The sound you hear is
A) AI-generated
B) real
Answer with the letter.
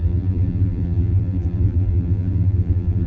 A